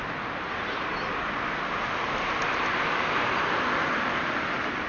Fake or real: real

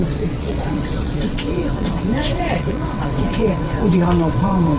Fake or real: fake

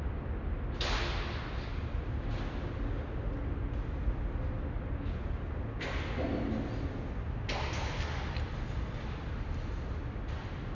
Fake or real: real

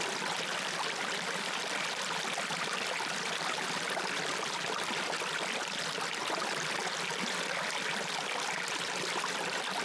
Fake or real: real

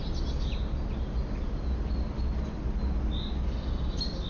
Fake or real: real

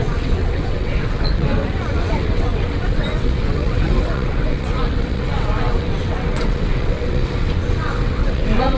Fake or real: fake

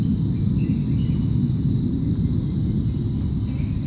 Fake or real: real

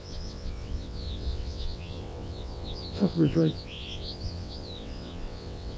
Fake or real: fake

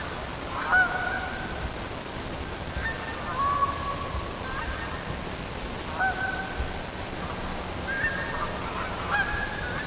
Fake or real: real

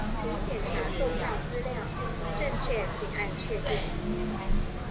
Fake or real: real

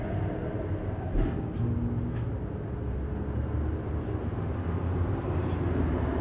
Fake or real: real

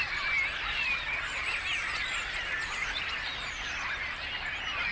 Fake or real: real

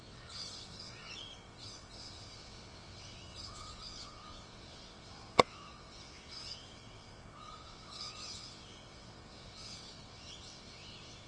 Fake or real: fake